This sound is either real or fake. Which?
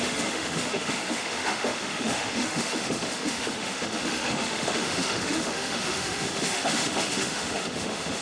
fake